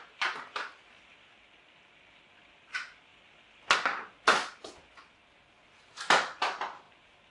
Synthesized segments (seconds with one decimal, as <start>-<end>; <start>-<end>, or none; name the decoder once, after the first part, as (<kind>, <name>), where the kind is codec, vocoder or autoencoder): none